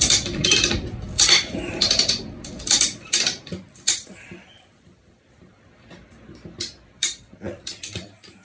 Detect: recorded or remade remade